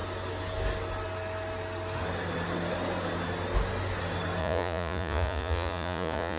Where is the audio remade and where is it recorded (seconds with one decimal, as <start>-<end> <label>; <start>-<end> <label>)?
0.0-4.4 recorded; 4.4-6.4 remade